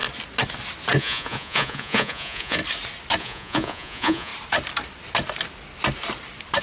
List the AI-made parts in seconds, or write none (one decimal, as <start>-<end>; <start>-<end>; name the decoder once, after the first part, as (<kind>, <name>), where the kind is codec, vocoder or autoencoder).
1.0-2.6 (vocoder, Vocos); 3.2-4.3